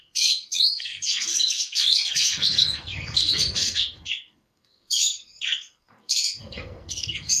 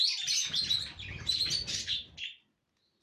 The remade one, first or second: first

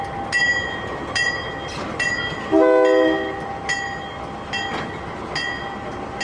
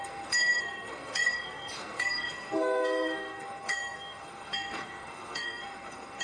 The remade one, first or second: second